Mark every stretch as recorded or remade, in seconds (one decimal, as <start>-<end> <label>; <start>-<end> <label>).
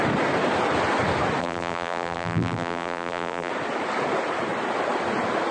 0.0-1.4 recorded; 1.4-3.5 remade; 3.5-5.5 recorded